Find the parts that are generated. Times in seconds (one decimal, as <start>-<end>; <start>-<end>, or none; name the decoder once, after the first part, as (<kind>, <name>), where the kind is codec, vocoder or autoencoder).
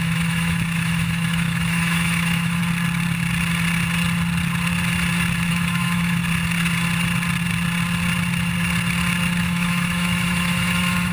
0.0-2.6 (autoencoder, DAC-VAE); 5.5-6.2; 9.4-11.1